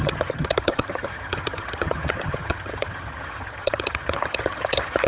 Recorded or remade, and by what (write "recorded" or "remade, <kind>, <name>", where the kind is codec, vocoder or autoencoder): remade, vocoder, HiFi-GAN